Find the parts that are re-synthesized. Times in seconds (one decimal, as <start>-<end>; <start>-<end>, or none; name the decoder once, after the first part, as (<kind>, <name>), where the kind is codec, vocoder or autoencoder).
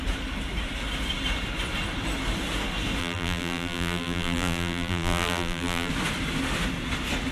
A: 3.0-5.9 (vocoder, BigVGAN v2)